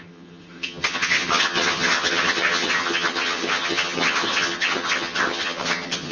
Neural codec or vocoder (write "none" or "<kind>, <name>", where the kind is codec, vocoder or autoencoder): vocoder, HiFi-GAN